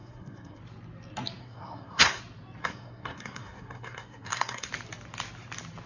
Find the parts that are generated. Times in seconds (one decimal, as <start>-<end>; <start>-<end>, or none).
0.0-0.6; 1.4-2.2; 2.6-4.7